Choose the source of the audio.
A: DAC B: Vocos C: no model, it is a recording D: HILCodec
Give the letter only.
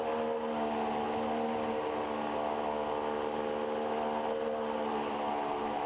C